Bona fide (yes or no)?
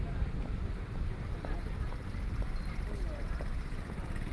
yes